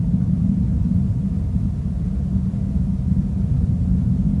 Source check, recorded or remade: recorded